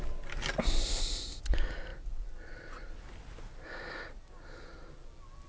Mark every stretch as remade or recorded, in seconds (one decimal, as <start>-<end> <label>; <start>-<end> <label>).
0.0-0.8 recorded; 0.8-1.4 remade; 1.4-5.5 recorded